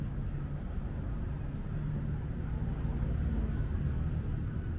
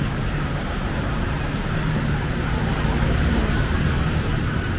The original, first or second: first